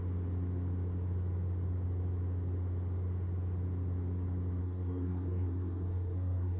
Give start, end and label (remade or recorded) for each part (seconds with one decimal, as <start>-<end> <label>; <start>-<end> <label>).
0.0-4.6 recorded; 4.6-6.6 remade

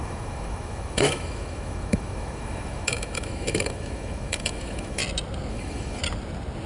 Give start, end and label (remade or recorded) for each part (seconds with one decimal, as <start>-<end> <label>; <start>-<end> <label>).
0.0-5.0 remade; 5.0-5.5 recorded; 5.5-6.0 remade; 6.0-6.7 recorded

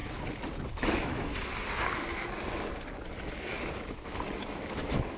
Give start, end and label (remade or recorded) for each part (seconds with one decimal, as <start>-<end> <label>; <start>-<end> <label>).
0.0-0.7 recorded; 0.7-1.3 remade; 1.3-4.4 recorded; 4.4-5.2 remade

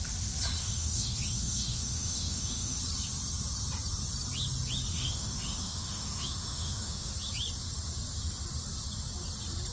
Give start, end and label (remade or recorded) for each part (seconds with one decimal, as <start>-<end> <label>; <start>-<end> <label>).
0.0-0.6 recorded; 0.6-2.8 remade; 2.8-4.9 recorded; 4.9-7.1 remade; 7.1-9.7 recorded

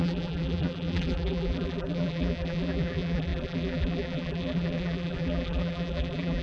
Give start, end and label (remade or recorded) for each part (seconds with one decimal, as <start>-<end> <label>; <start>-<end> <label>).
0.0-6.4 remade

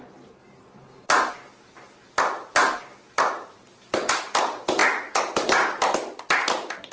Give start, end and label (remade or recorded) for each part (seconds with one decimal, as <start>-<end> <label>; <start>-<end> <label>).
0.0-6.9 recorded

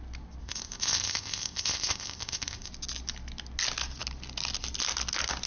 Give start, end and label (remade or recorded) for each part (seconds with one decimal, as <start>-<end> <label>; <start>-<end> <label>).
0.0-0.4 recorded; 0.4-2.7 remade; 2.7-5.5 recorded

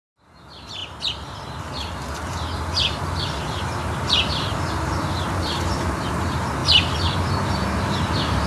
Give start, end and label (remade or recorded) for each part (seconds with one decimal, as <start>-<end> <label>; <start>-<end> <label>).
0.0-8.5 recorded